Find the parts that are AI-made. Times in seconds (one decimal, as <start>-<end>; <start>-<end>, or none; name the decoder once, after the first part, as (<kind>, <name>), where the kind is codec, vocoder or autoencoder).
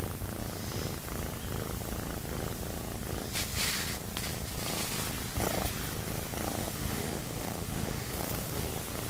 6.6-8.7 (autoencoder, DAC-VAE)